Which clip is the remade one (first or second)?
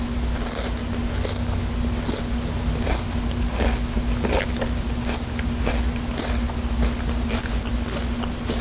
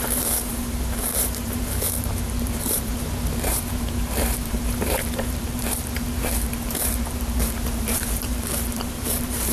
second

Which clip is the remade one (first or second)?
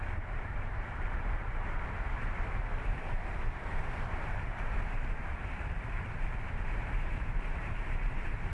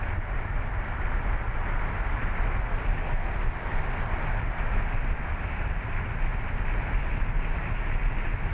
first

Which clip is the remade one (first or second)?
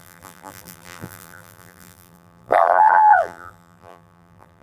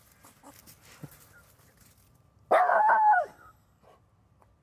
first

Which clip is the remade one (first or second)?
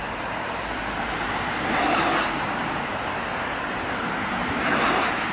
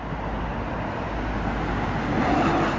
first